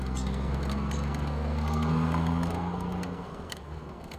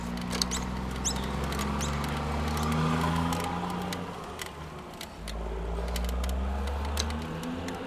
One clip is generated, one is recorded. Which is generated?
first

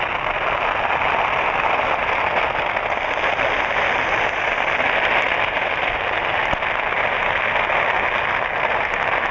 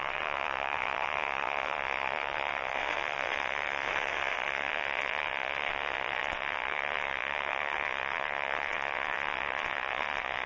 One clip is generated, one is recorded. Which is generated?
second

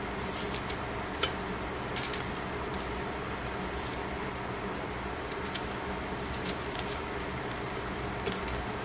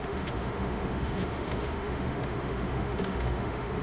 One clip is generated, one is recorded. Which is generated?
second